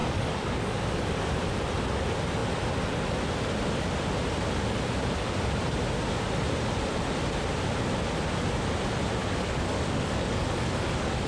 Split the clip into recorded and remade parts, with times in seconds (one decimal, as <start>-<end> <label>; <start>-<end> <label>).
0.0-1.3 remade; 1.3-9.2 recorded; 9.2-11.3 remade